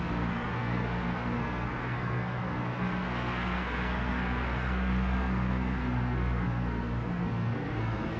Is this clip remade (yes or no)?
yes